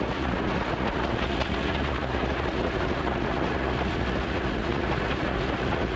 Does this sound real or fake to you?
fake